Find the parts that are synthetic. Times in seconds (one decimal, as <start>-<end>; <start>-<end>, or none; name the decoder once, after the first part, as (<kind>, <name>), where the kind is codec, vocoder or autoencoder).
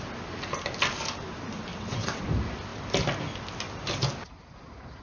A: 1.7-2.2 (vocoder, WaveNeXt)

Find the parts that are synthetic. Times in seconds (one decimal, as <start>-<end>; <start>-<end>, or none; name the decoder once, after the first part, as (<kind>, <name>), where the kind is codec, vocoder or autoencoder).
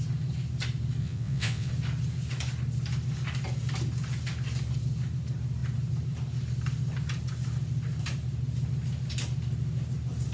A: 1.0-1.7 (vocoder, WaveNeXt)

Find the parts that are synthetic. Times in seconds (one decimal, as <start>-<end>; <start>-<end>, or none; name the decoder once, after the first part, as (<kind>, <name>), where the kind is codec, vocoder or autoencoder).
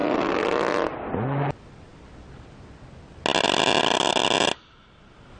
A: none